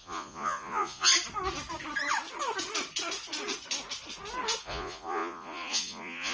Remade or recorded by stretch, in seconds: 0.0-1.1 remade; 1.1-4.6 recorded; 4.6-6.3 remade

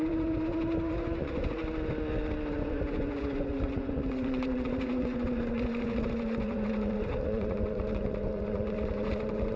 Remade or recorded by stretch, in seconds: 0.0-1.6 remade; 1.6-2.5 recorded; 2.5-9.6 remade

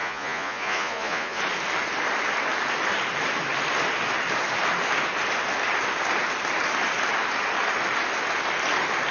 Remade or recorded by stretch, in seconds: 0.0-1.4 remade; 1.4-9.1 recorded

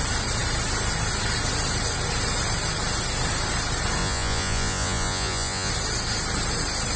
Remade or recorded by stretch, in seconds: 0.0-4.0 recorded; 4.0-5.7 remade; 5.7-7.0 recorded

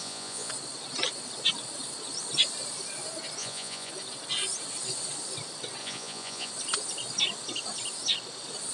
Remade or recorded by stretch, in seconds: 0.0-0.5 remade; 0.5-3.4 recorded; 3.4-3.9 remade; 3.9-5.8 recorded; 5.8-6.5 remade; 6.5-8.7 recorded

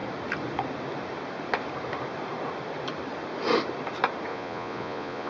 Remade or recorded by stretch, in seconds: 0.0-4.3 recorded; 4.3-5.3 remade